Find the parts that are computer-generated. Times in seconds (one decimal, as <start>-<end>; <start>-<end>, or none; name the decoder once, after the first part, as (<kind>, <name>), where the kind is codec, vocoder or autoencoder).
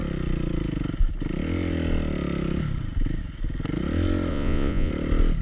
4.3-4.9 (vocoder, Vocos)